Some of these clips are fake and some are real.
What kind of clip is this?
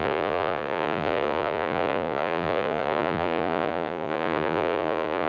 fake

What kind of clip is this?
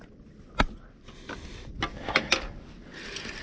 real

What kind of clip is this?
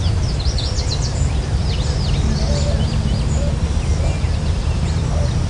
real